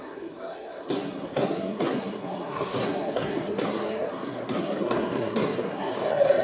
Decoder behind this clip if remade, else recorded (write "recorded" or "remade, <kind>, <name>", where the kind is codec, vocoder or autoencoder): remade, codec, SNAC